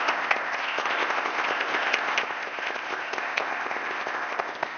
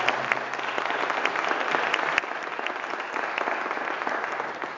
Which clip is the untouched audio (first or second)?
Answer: second